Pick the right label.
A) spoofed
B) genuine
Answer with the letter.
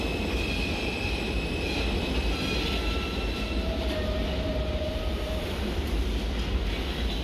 B